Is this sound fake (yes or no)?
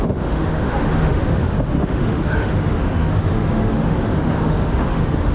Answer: yes